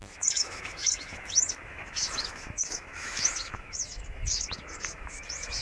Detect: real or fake fake